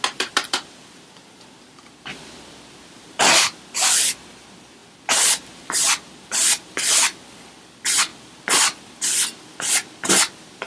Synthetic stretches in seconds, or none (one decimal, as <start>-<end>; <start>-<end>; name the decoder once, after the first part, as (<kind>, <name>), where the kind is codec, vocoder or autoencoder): none